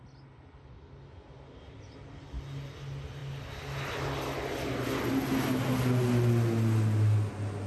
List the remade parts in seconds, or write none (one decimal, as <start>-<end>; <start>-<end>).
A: none